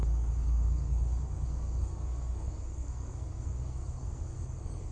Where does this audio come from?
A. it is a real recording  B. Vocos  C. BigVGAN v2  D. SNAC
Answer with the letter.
D